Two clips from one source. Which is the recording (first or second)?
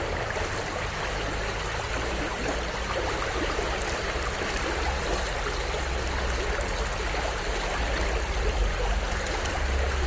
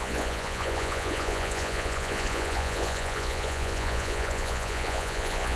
first